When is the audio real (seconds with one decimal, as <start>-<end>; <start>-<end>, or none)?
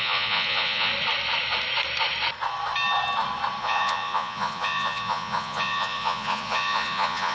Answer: 0.9-3.6